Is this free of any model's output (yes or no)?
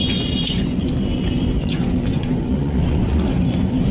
no